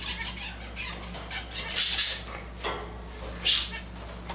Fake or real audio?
real